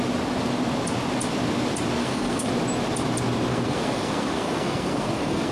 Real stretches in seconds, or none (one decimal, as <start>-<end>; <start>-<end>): 0.0-2.0; 2.5-3.5